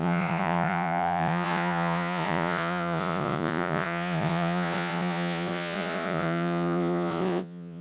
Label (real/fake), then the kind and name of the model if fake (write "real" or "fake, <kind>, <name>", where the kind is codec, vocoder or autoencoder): fake, vocoder, Vocos